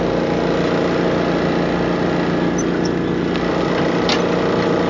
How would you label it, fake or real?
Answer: real